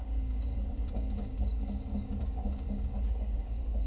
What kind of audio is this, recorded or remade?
remade